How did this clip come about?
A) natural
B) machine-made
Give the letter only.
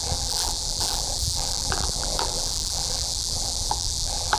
B